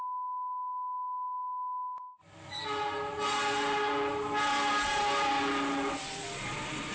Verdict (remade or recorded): recorded